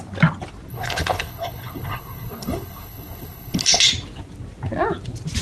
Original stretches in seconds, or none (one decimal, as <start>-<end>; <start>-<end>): 0.0-0.7; 3.9-5.4